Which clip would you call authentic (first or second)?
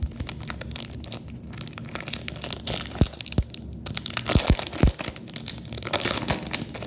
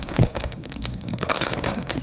first